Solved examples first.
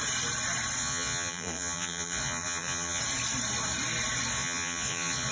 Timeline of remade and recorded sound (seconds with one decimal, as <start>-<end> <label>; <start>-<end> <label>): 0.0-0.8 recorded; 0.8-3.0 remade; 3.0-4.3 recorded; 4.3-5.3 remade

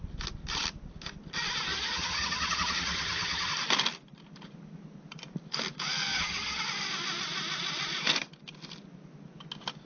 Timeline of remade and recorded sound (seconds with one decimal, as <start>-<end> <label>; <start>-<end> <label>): 0.0-1.7 recorded; 1.7-3.5 remade; 3.5-6.1 recorded; 6.1-6.6 remade; 6.6-9.9 recorded

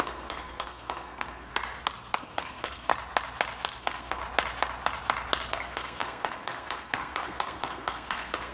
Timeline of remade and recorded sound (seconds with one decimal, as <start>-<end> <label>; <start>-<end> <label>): 0.0-1.5 remade; 1.5-2.2 recorded; 2.2-2.9 remade; 2.9-3.8 recorded; 3.8-4.2 remade; 4.2-5.5 recorded; 5.5-8.5 remade